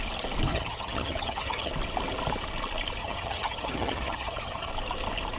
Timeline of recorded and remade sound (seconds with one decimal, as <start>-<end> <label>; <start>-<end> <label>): 0.0-0.5 recorded; 0.5-1.7 remade; 1.7-3.0 recorded; 3.0-4.7 remade; 4.7-5.4 recorded